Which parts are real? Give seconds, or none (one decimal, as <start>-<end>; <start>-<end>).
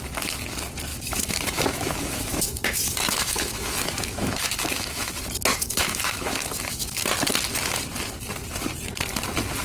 0.0-0.9; 5.1-5.5; 7.1-9.6